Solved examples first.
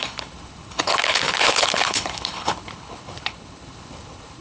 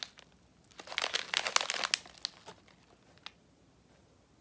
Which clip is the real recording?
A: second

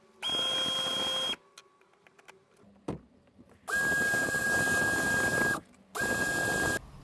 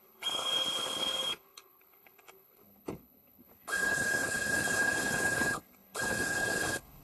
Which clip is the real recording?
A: first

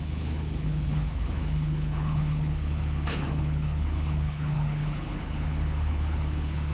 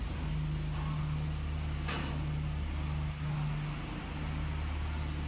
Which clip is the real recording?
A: second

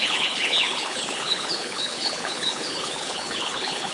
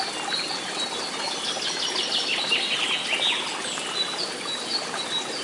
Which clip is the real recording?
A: second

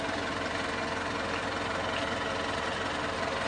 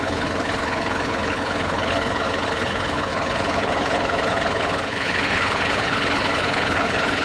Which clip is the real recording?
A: first